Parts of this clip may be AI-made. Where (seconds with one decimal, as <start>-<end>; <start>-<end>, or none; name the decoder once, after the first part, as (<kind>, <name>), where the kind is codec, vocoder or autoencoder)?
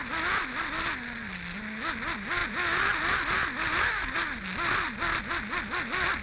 none